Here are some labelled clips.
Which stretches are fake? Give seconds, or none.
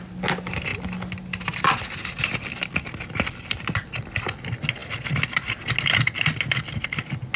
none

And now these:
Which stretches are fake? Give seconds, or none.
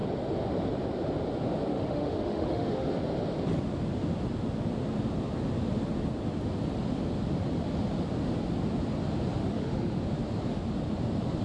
1.7-2.9 (autoencoder, DAC-VAE); 9.4-10.0